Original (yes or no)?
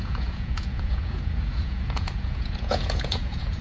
no